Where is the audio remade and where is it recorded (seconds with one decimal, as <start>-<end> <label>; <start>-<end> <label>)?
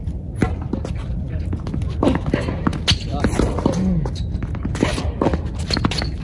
0.0-6.2 recorded